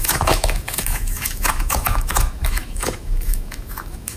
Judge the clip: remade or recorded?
remade